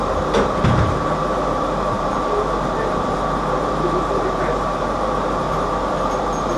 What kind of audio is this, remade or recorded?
remade